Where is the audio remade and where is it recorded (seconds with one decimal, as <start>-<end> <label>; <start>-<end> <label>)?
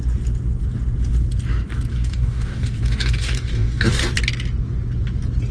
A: 0.0-1.9 recorded; 1.9-4.0 remade; 4.0-5.5 recorded